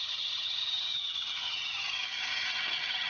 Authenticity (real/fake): fake